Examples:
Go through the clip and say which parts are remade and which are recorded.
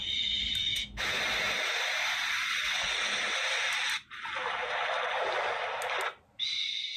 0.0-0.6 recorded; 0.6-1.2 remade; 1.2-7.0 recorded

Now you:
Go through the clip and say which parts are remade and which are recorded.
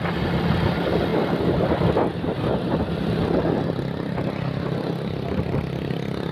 0.0-6.3 recorded